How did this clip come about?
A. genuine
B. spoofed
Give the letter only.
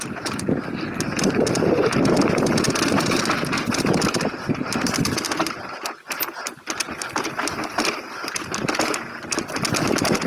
A